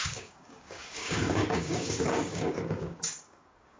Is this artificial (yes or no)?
yes